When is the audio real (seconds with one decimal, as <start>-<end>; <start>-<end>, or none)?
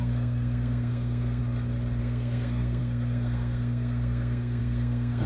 1.4-2.0